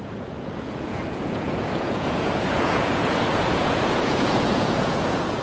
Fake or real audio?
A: fake